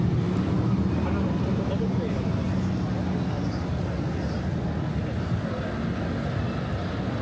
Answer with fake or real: real